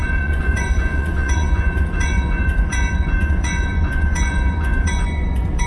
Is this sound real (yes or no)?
no